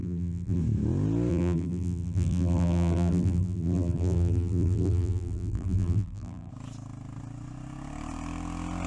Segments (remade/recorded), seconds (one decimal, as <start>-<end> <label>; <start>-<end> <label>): 0.0-0.6 remade; 0.6-1.3 recorded; 1.3-6.5 remade; 6.5-8.9 recorded